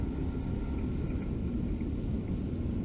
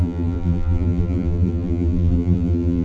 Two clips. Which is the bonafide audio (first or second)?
first